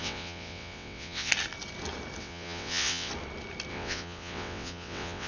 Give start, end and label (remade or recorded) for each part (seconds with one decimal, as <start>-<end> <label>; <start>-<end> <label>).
0.0-1.3 remade; 1.3-2.2 recorded; 2.2-3.1 remade; 3.1-3.7 recorded; 3.7-5.3 remade